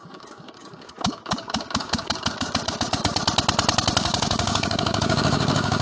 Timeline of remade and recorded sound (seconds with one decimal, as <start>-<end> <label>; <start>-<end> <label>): 0.0-3.2 remade; 3.2-4.0 recorded; 4.0-5.8 remade